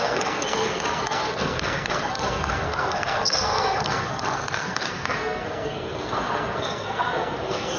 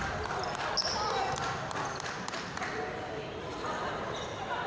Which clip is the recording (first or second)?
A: second